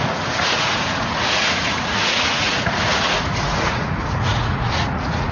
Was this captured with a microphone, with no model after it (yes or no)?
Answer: no